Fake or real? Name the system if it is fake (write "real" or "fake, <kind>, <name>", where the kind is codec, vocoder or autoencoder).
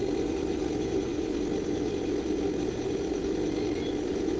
real